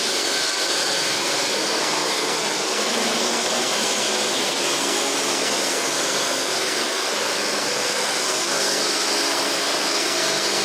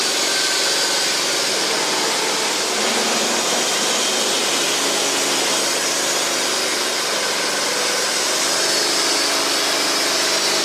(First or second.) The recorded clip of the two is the second